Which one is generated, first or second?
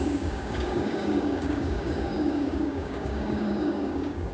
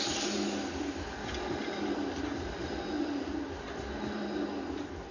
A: first